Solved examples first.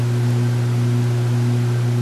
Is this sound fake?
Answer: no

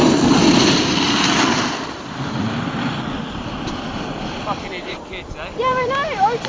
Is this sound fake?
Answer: yes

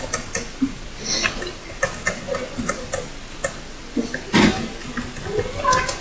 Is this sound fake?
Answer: no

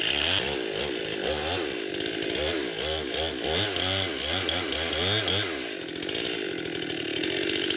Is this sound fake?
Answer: no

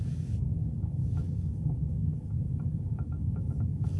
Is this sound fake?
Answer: yes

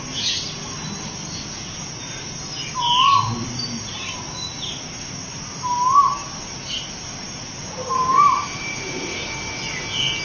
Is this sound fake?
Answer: no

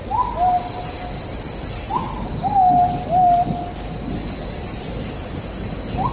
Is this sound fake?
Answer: no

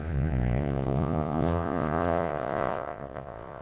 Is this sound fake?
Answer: yes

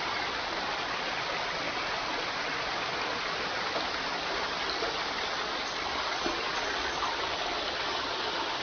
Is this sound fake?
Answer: no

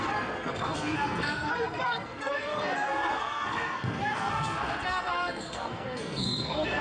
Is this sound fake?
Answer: yes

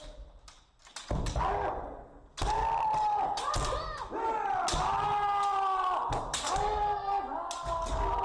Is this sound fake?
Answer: no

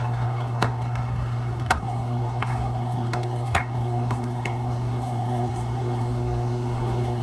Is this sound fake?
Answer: yes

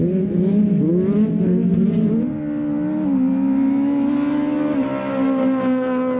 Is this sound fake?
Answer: no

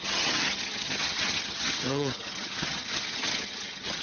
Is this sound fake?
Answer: yes